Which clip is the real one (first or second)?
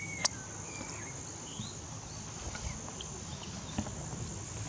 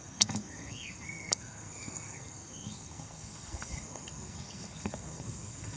first